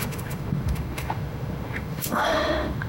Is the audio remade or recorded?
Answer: remade